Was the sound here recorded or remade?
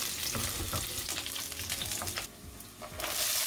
recorded